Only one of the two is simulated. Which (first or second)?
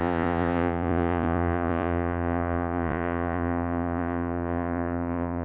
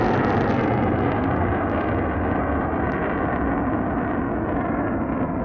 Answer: first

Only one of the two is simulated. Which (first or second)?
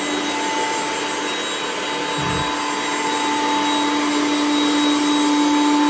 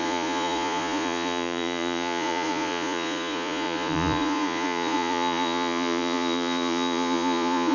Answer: second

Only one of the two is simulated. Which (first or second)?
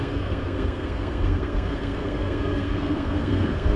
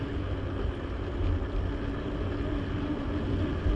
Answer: first